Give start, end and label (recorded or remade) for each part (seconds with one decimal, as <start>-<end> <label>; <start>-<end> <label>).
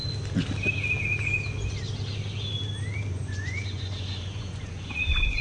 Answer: 0.0-3.1 recorded; 3.1-5.4 remade